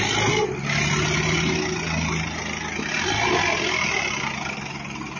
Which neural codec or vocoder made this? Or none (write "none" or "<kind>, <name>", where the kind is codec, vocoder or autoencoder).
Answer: none